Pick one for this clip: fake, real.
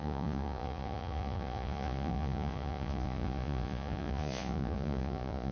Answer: fake